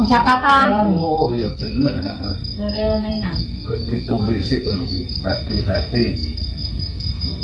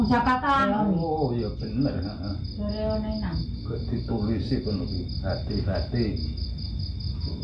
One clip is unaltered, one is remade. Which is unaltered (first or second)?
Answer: second